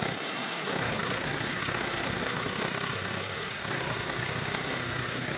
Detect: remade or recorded remade